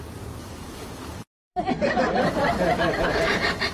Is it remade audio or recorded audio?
remade